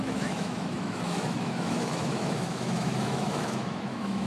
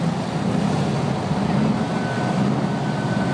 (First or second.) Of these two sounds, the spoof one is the first